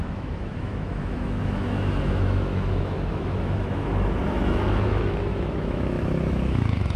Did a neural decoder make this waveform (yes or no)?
yes